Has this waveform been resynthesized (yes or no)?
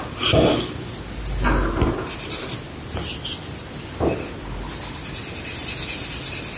no